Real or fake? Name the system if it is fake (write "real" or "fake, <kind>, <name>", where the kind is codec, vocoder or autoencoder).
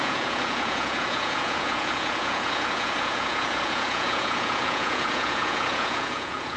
fake, vocoder, Vocos